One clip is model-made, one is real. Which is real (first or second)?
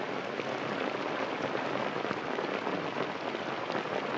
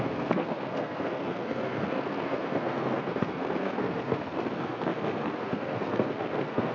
first